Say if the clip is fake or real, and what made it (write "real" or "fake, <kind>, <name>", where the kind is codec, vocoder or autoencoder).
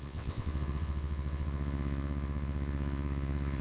fake, vocoder, WaveNeXt